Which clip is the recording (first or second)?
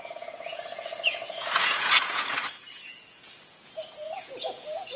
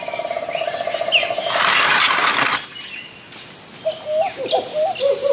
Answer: second